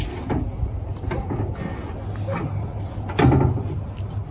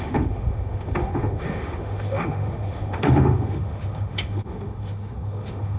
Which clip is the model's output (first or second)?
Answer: second